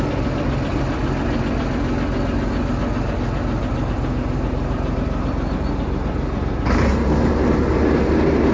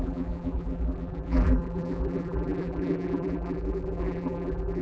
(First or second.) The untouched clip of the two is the first